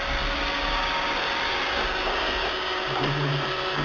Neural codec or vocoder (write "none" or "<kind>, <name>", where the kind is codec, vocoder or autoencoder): none